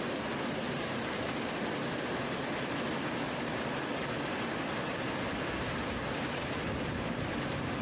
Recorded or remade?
recorded